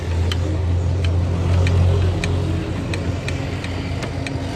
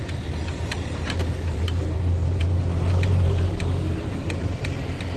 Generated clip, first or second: second